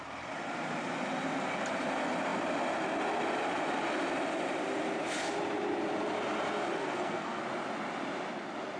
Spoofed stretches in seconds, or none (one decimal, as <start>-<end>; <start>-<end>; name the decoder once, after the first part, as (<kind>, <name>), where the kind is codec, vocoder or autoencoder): 6.7-7.4 (codec, SNAC)